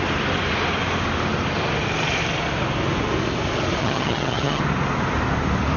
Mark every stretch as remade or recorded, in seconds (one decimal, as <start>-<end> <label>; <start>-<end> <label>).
0.0-3.8 recorded; 3.8-4.6 remade; 4.6-5.8 recorded